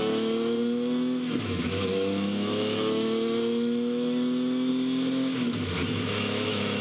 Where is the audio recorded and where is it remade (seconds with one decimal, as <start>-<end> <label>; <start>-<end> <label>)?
0.0-4.7 remade; 4.7-5.9 recorded; 5.9-6.8 remade